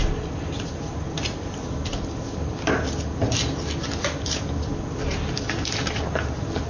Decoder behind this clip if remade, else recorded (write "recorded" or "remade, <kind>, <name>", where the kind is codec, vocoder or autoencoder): recorded